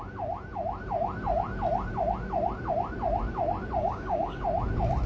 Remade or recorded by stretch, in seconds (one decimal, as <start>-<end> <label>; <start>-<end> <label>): 0.0-3.8 recorded; 3.8-4.4 remade; 4.4-5.1 recorded